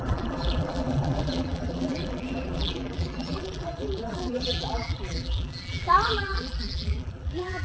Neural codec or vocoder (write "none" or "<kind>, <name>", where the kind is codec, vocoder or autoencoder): vocoder, BigVGAN v2